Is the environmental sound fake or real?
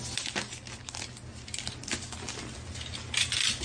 real